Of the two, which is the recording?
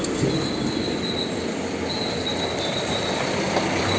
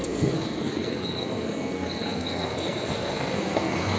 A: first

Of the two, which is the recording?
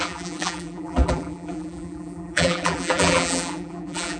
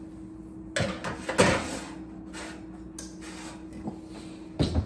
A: second